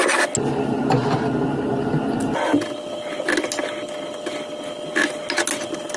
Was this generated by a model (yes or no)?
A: no